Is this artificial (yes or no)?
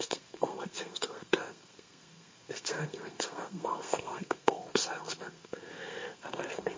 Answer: yes